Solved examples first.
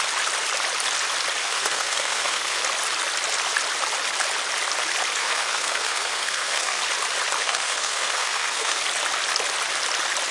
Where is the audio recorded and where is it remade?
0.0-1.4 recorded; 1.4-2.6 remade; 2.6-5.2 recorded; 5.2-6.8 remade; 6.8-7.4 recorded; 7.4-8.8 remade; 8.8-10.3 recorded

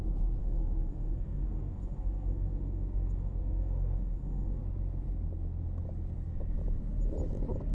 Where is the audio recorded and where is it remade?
0.0-0.4 recorded; 0.4-4.6 remade; 4.6-7.7 recorded